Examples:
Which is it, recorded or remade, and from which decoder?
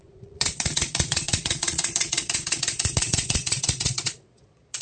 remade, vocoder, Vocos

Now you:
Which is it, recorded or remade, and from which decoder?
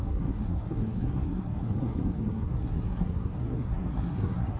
remade, codec, SNAC